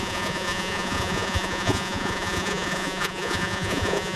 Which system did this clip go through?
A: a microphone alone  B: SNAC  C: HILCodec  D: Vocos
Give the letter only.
D